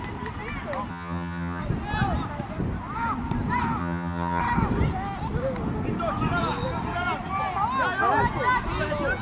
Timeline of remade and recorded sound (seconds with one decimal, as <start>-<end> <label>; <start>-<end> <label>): 0.0-0.9 recorded; 0.9-1.6 remade; 1.6-3.8 recorded; 3.8-4.4 remade; 4.4-9.2 recorded